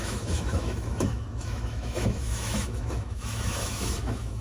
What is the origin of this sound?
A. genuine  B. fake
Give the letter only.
B